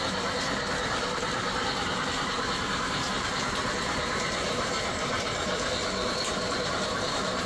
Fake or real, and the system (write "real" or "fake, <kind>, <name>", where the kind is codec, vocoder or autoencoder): fake, vocoder, BigVGAN v2